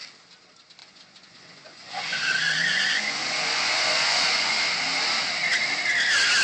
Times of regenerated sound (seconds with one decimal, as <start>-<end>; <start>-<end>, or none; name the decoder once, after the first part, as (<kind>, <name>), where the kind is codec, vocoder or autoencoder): 0.8-4.6 (vocoder, Vocos)